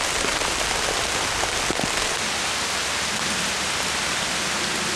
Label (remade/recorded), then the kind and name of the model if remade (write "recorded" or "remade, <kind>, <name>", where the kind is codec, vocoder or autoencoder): recorded